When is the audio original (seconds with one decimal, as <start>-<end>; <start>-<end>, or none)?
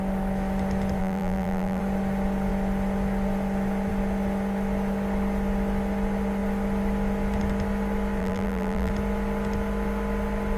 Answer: 0.0-1.0; 1.8-8.2; 8.9-10.6